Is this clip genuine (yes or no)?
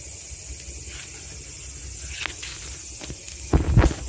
yes